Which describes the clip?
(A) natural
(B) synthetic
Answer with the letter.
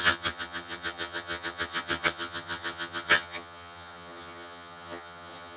B